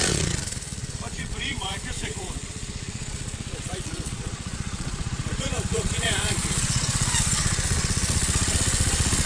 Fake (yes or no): yes